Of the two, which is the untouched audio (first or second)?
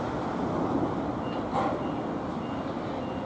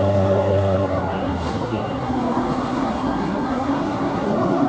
first